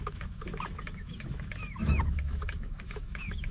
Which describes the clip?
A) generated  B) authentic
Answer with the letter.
A